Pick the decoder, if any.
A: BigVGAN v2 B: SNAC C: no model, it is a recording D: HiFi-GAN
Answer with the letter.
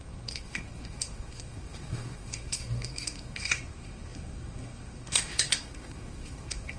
B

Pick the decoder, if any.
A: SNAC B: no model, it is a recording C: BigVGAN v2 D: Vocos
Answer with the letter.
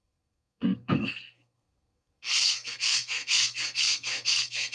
A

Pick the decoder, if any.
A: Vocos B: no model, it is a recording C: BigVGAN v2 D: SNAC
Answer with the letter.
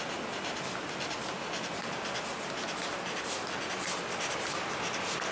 B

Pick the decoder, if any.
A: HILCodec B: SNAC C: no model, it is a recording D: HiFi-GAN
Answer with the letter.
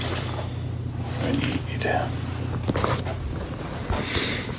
C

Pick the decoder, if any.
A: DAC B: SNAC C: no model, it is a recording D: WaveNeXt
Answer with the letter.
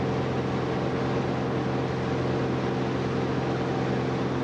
C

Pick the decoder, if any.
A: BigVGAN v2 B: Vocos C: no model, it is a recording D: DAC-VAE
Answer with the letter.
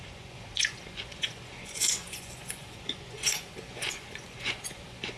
B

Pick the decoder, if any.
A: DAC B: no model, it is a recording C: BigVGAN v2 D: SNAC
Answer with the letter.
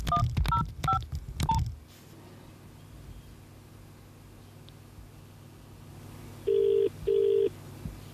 B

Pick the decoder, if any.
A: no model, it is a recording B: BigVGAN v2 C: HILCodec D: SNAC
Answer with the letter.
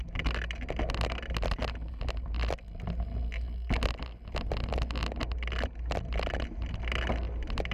A